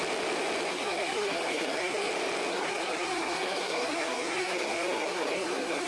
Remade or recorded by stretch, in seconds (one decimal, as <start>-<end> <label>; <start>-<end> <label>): 0.0-0.7 recorded; 0.7-2.1 remade; 2.1-2.5 recorded; 2.5-5.9 remade